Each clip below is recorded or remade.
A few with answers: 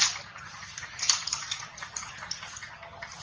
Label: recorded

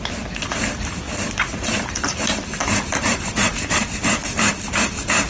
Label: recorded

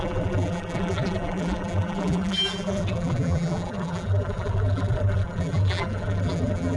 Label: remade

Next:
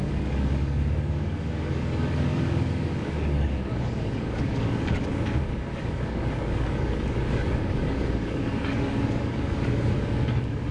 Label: remade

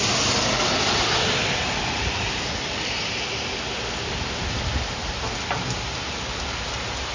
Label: recorded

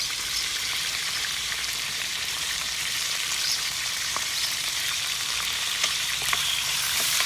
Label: remade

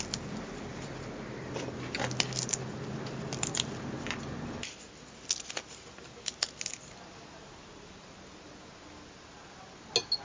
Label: recorded